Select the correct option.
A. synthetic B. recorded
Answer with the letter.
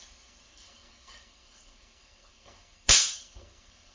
A